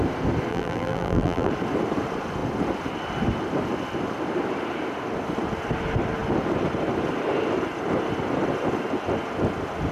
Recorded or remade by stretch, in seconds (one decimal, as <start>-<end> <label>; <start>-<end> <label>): 0.0-0.5 recorded; 0.5-1.5 remade; 1.5-9.9 recorded